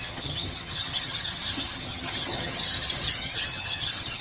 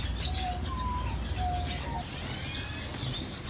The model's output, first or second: first